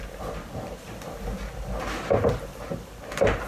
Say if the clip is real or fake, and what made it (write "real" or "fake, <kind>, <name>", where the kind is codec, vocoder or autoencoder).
real